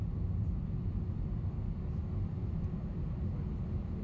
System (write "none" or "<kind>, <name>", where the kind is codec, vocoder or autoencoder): none